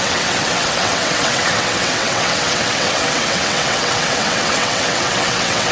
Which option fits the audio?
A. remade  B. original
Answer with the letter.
A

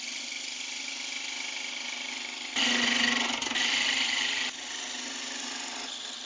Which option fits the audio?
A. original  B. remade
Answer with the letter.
A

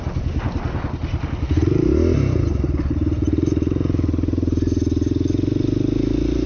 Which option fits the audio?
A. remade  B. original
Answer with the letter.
B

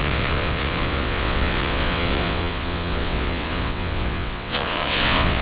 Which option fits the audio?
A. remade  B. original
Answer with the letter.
A